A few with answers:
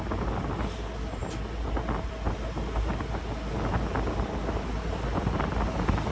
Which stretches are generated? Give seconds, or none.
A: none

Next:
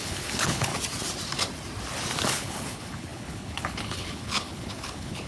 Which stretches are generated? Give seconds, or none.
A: 0.0-0.7 (codec, HILCodec); 2.3-5.3